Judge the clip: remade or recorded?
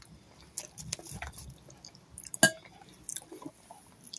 recorded